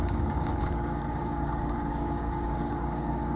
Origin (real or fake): fake